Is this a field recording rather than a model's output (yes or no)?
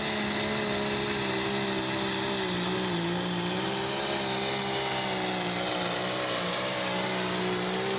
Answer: yes